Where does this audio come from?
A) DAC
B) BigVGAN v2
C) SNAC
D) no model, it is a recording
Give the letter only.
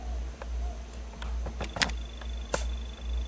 D